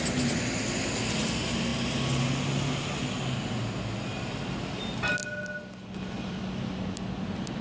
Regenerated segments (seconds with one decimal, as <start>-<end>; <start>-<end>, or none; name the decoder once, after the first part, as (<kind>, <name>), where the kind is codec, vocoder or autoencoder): none